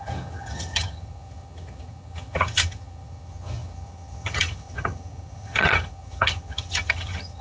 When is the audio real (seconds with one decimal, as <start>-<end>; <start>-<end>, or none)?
none